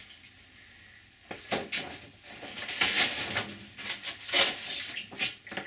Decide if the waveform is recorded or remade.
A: recorded